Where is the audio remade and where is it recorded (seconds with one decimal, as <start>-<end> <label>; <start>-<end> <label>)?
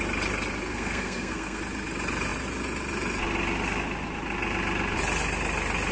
0.0-0.7 recorded; 0.7-1.6 remade; 1.6-5.9 recorded